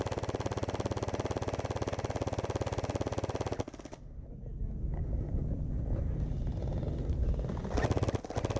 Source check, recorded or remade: recorded